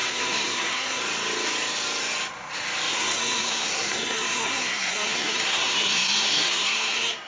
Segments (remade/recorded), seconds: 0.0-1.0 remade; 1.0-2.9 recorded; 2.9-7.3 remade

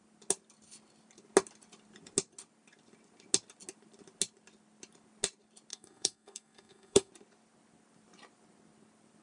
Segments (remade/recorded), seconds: 0.0-5.7 recorded; 5.7-7.1 remade; 7.1-9.2 recorded

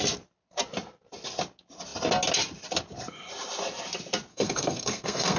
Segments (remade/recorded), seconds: 0.0-4.3 recorded; 4.3-5.4 remade

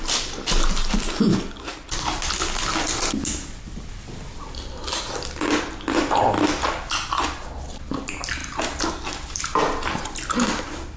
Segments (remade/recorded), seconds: 0.0-11.0 recorded

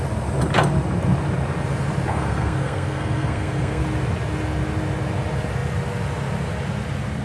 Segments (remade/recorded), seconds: 0.0-2.1 recorded; 2.1-3.8 remade; 3.8-7.2 recorded

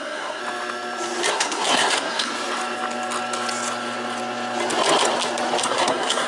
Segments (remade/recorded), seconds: 0.0-0.4 remade; 0.4-1.3 recorded; 1.3-2.3 remade; 2.3-5.6 recorded; 5.6-6.3 remade

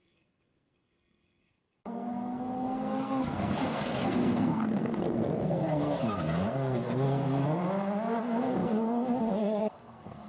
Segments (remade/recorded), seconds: 0.0-7.6 remade; 7.6-8.2 recorded; 8.2-10.3 remade